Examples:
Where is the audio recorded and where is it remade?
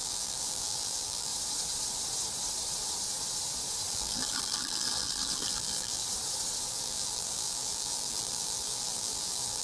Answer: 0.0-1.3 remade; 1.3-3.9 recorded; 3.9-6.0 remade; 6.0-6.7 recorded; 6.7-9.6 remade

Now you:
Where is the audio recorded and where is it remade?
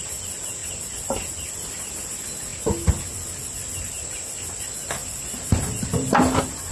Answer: 0.0-2.5 remade; 2.5-3.2 recorded; 3.2-6.7 remade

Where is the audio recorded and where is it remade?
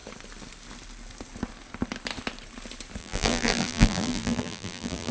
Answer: 0.0-3.0 recorded; 3.0-5.1 remade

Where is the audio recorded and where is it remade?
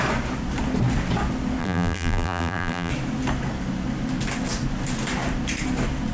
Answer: 0.0-1.6 recorded; 1.6-2.9 remade; 2.9-6.1 recorded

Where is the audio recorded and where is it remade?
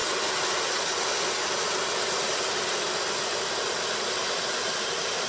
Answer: 0.0-5.3 recorded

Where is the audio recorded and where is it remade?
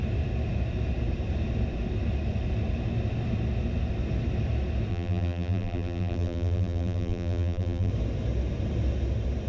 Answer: 0.0-4.9 recorded; 4.9-7.9 remade; 7.9-9.5 recorded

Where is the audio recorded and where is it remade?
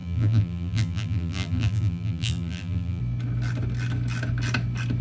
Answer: 0.0-3.0 remade; 3.0-5.0 recorded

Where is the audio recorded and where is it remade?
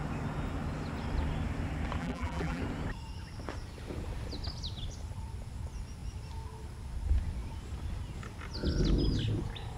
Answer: 0.0-2.0 recorded; 2.0-2.6 remade; 2.6-9.8 recorded